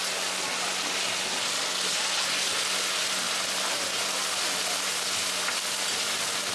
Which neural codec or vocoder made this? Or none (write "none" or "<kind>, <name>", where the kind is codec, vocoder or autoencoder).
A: none